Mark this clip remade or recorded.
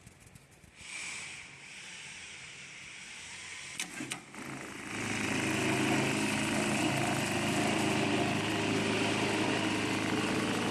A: recorded